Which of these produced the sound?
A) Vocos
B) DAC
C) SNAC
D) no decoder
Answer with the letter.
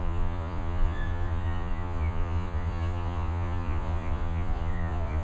A